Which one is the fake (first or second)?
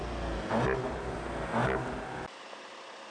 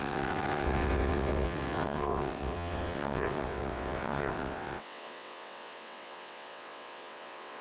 second